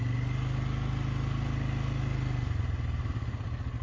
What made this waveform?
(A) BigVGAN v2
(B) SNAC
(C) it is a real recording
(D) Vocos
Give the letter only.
C